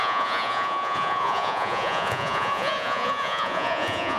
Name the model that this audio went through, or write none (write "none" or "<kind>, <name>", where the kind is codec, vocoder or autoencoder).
vocoder, Vocos